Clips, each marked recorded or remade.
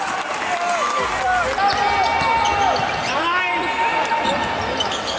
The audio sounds recorded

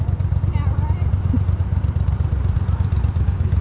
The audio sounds recorded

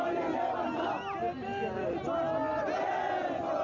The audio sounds recorded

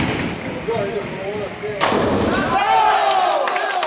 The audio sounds recorded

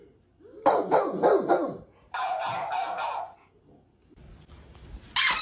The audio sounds recorded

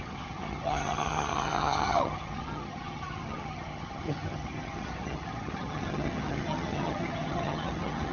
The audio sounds remade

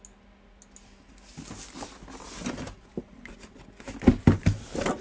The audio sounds recorded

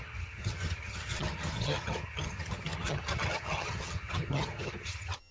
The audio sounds remade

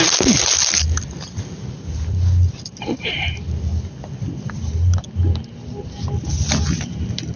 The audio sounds recorded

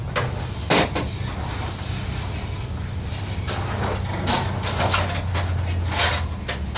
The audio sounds recorded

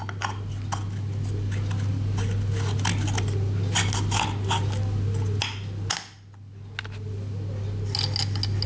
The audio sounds recorded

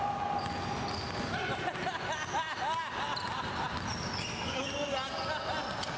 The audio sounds recorded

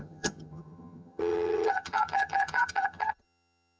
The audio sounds remade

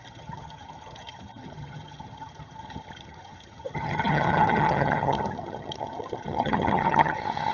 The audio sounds remade